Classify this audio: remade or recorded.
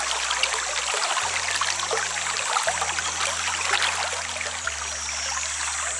recorded